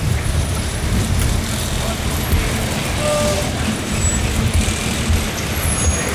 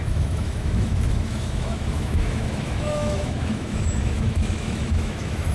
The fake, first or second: second